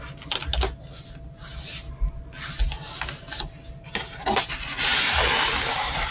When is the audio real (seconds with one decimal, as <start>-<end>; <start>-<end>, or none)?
0.0-6.1